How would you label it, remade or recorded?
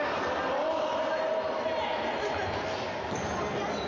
recorded